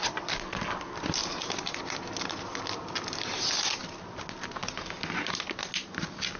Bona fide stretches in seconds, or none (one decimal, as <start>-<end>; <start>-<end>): 0.0-6.4

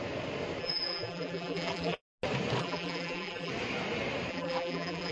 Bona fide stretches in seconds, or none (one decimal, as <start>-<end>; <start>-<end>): 0.0-0.6; 2.0-2.6; 3.5-4.3

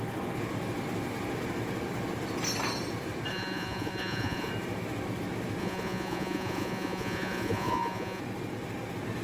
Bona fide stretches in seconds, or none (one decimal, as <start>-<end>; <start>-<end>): 0.0-3.3; 4.5-5.6; 8.2-9.2

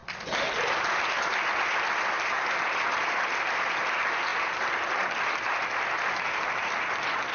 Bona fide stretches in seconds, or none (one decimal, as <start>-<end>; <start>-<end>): 0.0-7.3

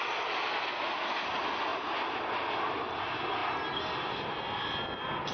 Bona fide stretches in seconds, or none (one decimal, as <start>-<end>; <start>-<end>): 0.0-5.3

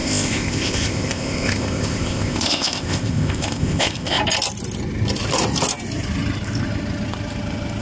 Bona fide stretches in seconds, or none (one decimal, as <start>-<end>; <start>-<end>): 4.2-7.8

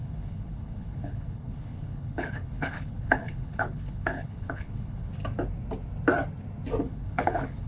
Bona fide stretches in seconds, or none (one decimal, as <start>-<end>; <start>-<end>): 5.1-6.8